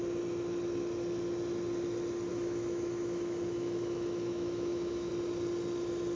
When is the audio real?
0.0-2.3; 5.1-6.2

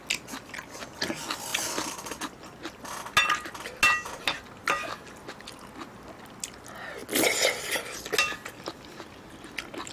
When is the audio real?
0.0-9.9

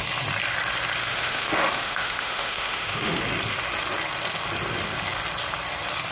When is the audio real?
0.0-1.1; 3.2-6.1

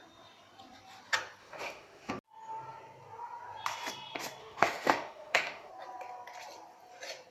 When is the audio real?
0.0-1.4; 2.1-4.4; 5.7-7.3

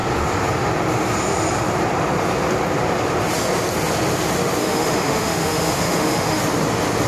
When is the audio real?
0.0-4.6; 6.4-7.1

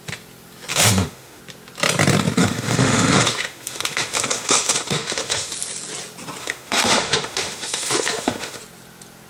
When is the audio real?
0.0-0.7; 1.4-2.4; 5.5-6.4; 8.6-9.3